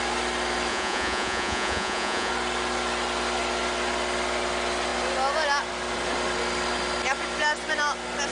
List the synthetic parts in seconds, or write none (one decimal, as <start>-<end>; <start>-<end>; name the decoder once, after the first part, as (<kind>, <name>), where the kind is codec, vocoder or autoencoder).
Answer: 0.7-2.3 (vocoder, Vocos)